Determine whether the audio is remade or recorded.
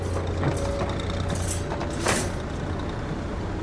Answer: recorded